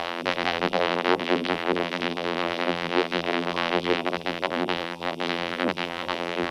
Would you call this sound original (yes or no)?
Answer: no